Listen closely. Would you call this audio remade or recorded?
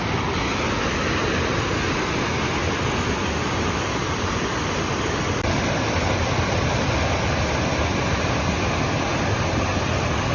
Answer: recorded